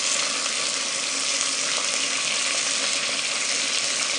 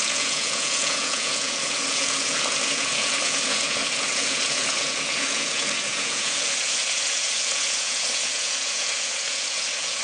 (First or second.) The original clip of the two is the first